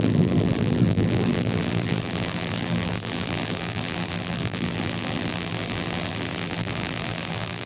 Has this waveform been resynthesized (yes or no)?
yes